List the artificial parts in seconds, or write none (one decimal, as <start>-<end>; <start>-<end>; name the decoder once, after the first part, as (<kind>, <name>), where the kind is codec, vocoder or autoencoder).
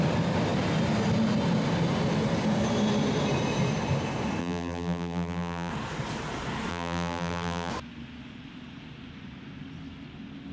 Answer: 4.4-5.7 (vocoder, BigVGAN v2); 6.7-7.7